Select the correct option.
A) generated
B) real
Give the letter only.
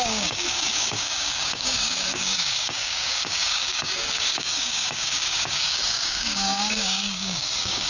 A